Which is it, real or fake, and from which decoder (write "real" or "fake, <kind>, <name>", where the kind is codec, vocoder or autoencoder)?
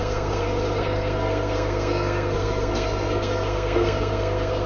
fake, codec, SNAC